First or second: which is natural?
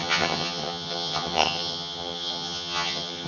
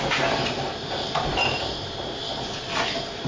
second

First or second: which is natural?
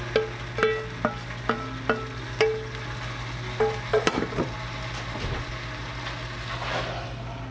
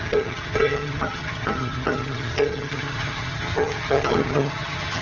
first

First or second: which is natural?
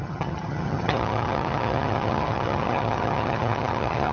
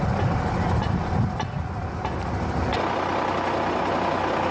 second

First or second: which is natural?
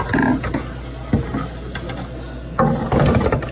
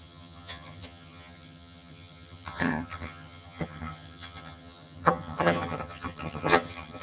first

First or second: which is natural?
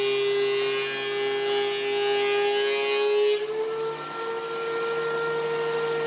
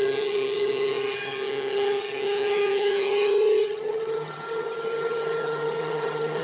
first